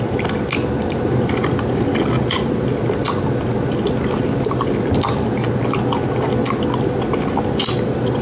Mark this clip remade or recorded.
recorded